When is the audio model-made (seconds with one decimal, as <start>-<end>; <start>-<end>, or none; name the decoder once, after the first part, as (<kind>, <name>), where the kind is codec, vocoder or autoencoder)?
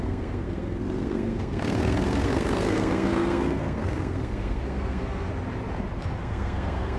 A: 0.0-5.3 (codec, SNAC); 6.2-7.0